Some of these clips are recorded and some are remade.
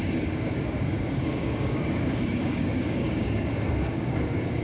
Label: remade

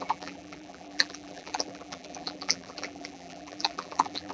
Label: remade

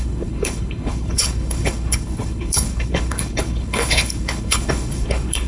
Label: remade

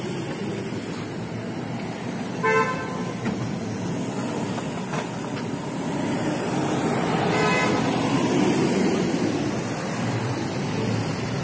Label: recorded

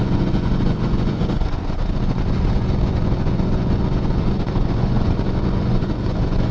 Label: remade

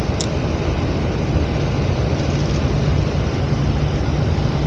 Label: recorded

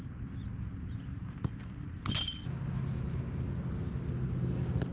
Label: recorded